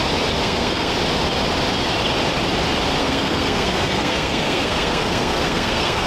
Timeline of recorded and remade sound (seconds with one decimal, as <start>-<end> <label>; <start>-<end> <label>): 0.0-0.4 recorded; 0.4-0.9 remade; 0.9-3.0 recorded; 3.0-6.1 remade